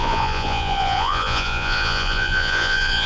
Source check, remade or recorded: remade